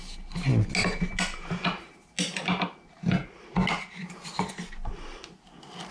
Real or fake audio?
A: real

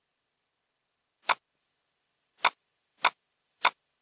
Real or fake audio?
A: real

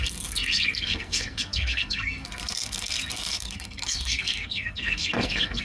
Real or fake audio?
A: fake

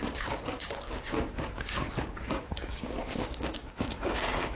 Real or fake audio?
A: fake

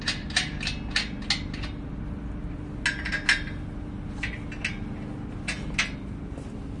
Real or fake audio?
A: real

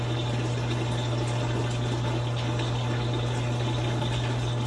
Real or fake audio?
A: real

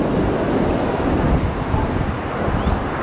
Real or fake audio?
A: real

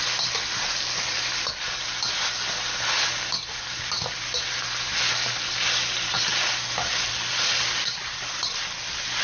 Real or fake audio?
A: real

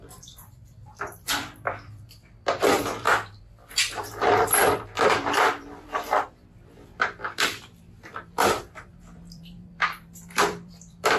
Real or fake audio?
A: fake